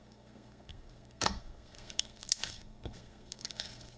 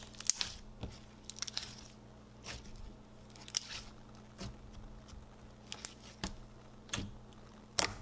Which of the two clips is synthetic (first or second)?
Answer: first